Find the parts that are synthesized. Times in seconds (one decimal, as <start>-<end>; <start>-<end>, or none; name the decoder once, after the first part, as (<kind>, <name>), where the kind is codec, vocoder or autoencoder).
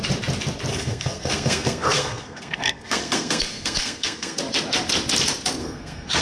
0.7-4.4 (codec, SNAC); 5.6-6.2